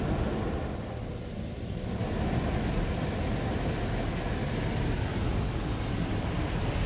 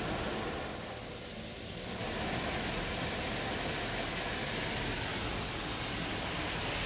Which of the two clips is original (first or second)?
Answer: second